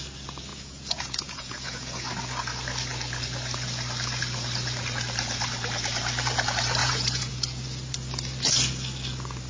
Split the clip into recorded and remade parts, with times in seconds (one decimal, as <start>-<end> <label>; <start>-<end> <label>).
0.0-0.5 recorded; 0.5-2.1 remade; 2.1-6.8 recorded; 6.8-7.3 remade; 7.3-9.5 recorded